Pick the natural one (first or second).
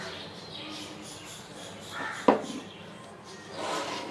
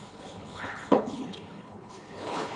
first